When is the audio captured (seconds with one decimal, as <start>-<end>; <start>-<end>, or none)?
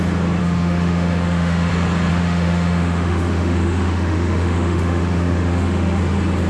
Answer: 0.0-0.4; 1.7-2.1; 6.0-6.5